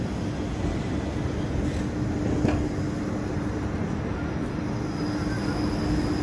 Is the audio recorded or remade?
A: recorded